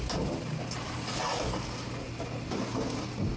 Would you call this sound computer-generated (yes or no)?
no